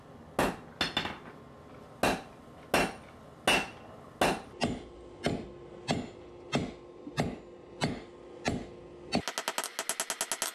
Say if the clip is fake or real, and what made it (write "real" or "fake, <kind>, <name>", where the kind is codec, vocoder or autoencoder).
real